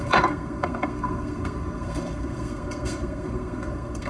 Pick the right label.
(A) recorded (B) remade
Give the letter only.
B